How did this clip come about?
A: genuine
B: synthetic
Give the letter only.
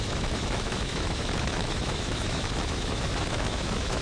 B